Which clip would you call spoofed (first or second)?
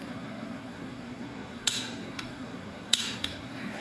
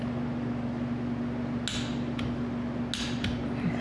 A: first